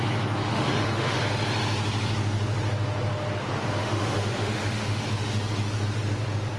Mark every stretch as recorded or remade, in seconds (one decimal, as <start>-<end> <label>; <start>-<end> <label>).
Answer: 0.0-0.5 recorded; 0.5-1.2 remade; 1.2-3.8 recorded; 3.8-5.0 remade; 5.0-6.6 recorded